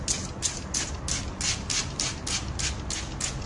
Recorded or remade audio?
recorded